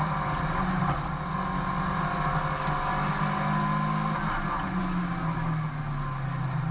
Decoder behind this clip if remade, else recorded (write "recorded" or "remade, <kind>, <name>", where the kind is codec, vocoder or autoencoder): recorded